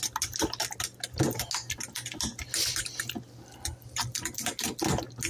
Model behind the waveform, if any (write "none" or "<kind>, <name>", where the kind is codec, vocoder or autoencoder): none